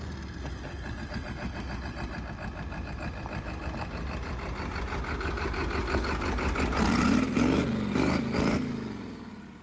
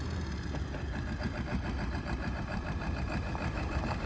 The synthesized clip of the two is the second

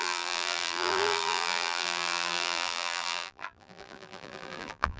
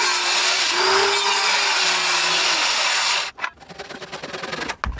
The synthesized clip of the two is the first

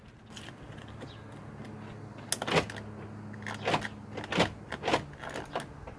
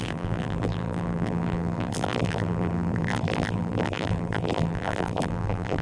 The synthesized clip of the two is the second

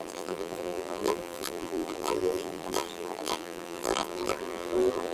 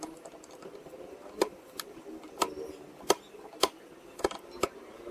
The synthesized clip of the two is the first